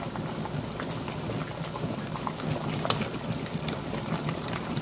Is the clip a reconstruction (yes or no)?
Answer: no